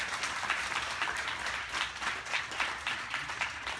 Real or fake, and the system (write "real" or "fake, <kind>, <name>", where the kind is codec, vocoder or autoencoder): real